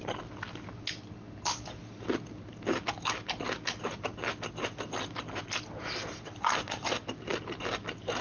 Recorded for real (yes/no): yes